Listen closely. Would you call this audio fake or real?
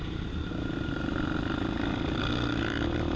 real